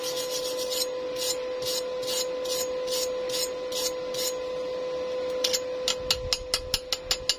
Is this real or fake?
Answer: real